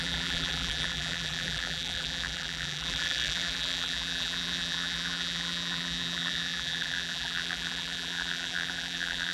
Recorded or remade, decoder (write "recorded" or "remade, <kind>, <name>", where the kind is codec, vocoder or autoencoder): remade, vocoder, BigVGAN v2